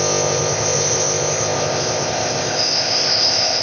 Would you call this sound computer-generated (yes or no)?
yes